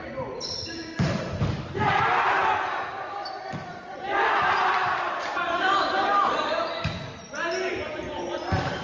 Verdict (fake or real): real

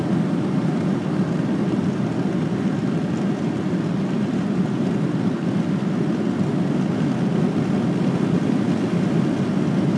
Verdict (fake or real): real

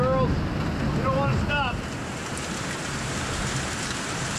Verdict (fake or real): real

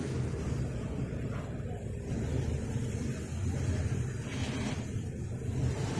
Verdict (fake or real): real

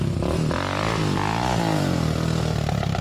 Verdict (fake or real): real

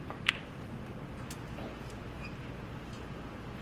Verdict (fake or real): real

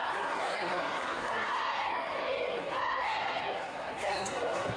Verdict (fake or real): fake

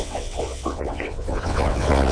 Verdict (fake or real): fake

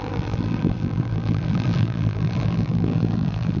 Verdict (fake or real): fake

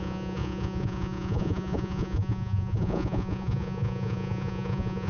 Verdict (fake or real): fake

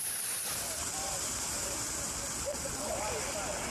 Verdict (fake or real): real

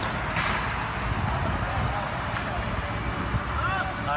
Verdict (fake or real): real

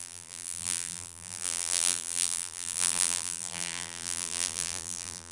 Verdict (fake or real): fake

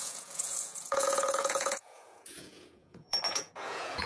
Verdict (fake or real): fake